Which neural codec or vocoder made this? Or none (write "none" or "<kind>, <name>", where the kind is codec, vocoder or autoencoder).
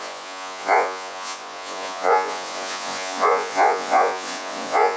vocoder, Vocos